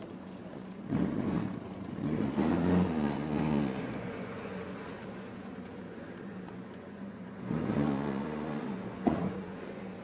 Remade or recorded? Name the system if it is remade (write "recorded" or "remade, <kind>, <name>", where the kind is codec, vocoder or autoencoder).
remade, vocoder, Vocos